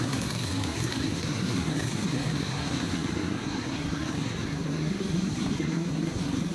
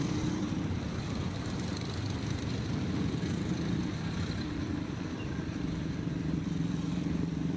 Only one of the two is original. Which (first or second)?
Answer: second